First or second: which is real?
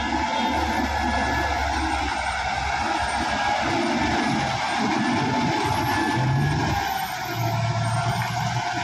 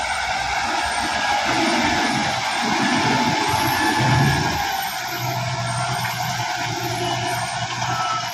first